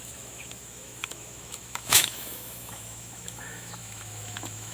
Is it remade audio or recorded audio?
remade